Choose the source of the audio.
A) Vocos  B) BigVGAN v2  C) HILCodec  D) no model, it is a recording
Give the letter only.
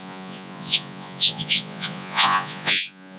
A